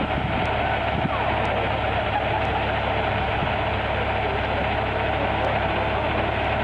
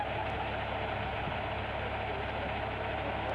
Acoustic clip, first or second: second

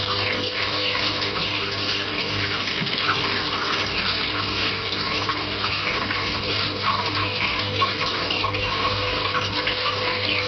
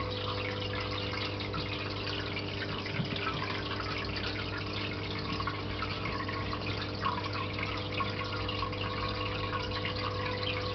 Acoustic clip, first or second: second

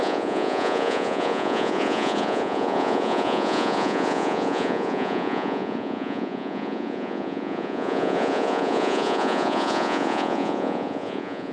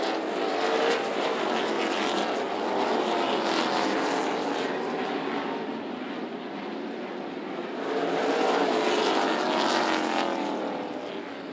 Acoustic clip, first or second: second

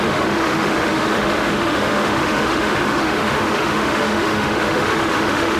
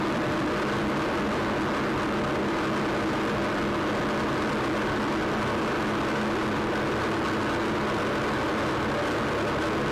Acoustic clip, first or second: second